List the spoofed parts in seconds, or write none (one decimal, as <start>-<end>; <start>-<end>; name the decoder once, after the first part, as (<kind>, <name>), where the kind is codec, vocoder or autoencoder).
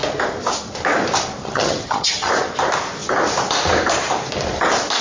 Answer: 1.4-2.3 (vocoder, HiFi-GAN)